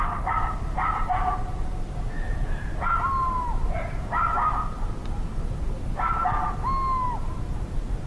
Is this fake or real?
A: real